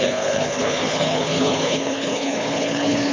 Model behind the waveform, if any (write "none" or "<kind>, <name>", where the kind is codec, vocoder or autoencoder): codec, HILCodec